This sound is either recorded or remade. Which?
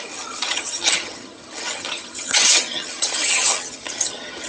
remade